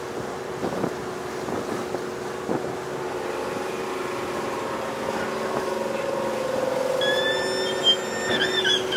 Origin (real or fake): real